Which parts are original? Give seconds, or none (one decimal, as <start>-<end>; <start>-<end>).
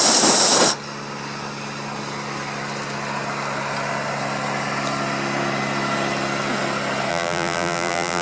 0.0-7.1